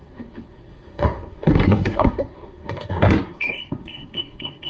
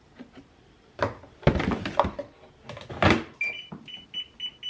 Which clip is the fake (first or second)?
first